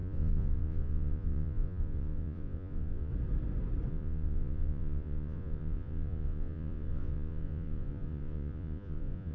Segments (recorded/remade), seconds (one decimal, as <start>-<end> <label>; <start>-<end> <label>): 0.0-3.1 remade; 3.1-3.9 recorded; 3.9-9.3 remade